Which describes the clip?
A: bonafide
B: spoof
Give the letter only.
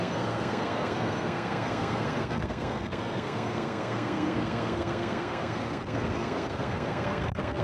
B